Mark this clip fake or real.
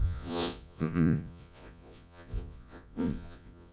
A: fake